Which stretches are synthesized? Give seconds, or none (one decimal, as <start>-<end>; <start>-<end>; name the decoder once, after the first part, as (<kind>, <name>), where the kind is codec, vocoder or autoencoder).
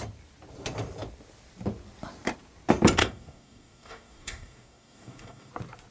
3.0-5.5 (codec, DAC)